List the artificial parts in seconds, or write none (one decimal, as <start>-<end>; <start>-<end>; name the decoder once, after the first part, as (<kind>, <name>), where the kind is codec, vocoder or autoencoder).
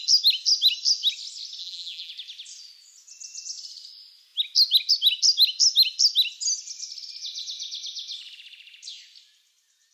1.6-2.1 (vocoder, BigVGAN v2)